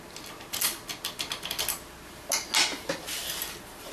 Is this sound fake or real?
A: real